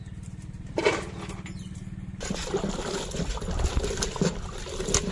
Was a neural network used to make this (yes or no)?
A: no